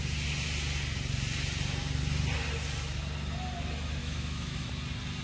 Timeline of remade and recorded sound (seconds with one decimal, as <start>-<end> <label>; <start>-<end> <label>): 0.0-4.0 recorded; 4.0-4.7 remade; 4.7-5.2 recorded